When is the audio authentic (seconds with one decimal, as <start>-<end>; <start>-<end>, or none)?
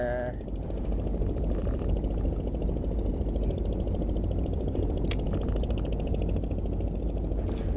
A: 0.0-1.6; 2.1-3.1; 5.7-7.8